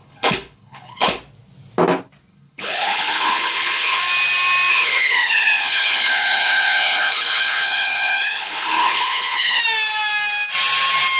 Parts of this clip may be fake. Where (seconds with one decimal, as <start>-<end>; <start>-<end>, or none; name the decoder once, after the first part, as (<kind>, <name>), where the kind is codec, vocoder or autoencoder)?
0.0-1.2 (codec, HILCodec); 2.3-4.0; 4.7-9.6